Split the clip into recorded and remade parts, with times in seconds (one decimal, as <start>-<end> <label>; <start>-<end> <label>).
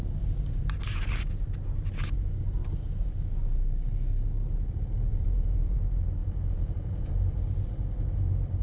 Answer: 0.0-5.1 recorded; 5.1-5.8 remade; 5.8-6.2 recorded; 6.2-7.1 remade; 7.1-8.6 recorded